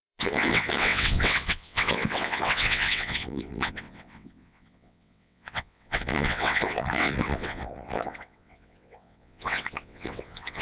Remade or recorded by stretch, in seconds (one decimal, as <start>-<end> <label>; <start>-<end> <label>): 0.0-10.6 remade